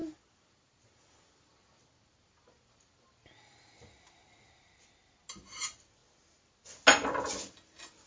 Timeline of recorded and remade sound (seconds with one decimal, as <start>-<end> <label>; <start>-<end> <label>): 0.0-8.1 recorded